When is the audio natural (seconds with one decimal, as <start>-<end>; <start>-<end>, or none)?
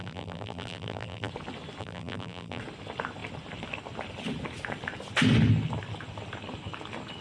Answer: 1.3-1.8; 2.6-7.2